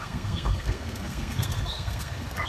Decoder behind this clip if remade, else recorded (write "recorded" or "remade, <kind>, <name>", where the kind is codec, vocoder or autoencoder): remade, codec, SNAC